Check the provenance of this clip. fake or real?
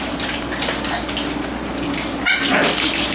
real